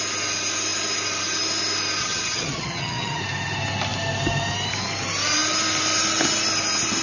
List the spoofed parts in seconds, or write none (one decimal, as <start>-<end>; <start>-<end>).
2.0-3.2